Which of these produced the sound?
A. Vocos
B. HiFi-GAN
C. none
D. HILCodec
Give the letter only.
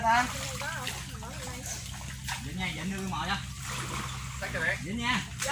C